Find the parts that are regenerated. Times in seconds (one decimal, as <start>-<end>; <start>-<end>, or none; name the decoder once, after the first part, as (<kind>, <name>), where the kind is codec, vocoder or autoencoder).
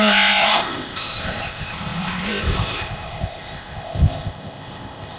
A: 0.0-5.2 (codec, ZipCodec)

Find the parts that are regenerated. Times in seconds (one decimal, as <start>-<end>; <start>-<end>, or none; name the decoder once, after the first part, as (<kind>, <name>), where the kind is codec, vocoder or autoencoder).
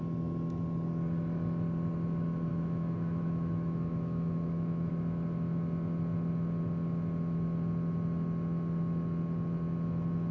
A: 2.5-4.9 (autoencoder, DAC-VAE)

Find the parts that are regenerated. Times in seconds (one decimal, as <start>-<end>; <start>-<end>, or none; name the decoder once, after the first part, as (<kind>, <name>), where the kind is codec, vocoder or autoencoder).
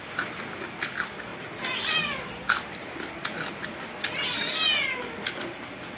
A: none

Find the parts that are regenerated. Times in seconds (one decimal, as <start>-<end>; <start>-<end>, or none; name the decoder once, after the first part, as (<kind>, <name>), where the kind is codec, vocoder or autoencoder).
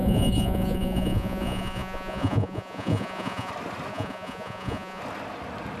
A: 0.0-3.5 (vocoder, Vocos); 3.9-5.0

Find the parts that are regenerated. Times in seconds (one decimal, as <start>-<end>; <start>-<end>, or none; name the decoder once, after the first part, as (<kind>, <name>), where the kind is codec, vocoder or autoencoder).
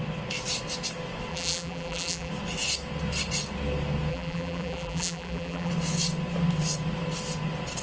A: 1.3-2.3 (vocoder, BigVGAN v2); 4.1-5.7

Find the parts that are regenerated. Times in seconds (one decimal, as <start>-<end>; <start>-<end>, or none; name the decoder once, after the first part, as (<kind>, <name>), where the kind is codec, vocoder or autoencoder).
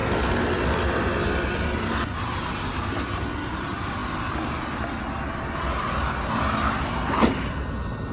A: none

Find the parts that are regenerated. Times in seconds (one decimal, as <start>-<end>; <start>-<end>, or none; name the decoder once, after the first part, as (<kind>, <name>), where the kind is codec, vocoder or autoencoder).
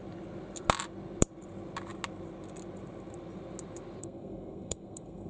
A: 4.0-5.3 (codec, SNAC)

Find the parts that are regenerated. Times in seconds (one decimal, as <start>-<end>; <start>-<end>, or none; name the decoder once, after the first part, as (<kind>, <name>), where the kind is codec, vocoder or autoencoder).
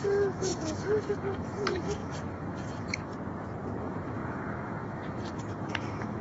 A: 0.0-3.1 (autoencoder, DAC-VAE); 3.8-6.2